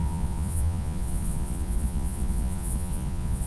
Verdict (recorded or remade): remade